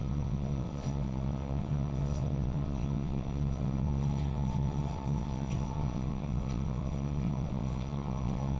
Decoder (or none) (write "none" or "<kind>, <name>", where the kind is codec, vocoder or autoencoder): vocoder, WaveNeXt